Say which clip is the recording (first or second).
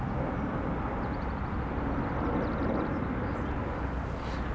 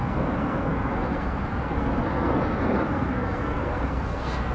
first